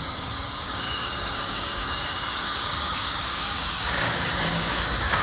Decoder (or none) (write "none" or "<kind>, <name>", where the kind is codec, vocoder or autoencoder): codec, DAC